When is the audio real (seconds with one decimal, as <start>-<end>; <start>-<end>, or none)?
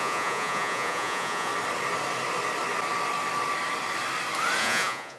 1.5-4.6